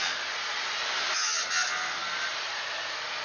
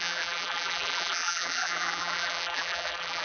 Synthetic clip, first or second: second